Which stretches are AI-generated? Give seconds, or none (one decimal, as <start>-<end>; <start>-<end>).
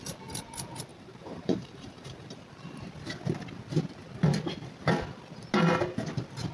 0.9-2.4